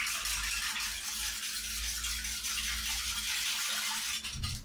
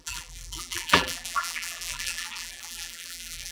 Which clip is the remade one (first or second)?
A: second